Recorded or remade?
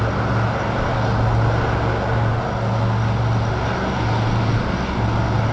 recorded